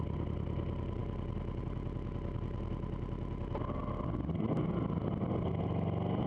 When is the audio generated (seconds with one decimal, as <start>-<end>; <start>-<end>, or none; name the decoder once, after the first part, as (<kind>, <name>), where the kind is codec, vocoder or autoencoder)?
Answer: none